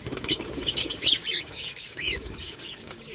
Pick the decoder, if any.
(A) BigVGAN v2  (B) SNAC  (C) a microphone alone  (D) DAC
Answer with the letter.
D